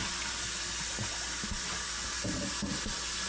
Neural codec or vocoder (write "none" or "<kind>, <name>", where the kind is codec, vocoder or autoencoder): none